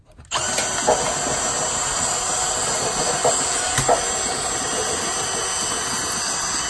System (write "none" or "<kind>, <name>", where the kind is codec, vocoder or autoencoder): none